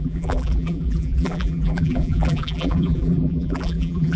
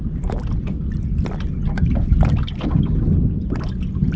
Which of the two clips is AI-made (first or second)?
first